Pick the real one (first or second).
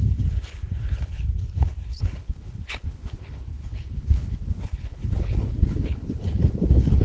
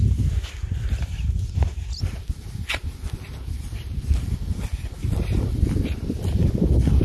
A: second